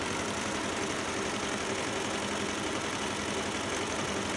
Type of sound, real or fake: real